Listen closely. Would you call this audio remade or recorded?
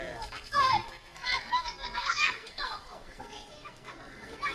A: remade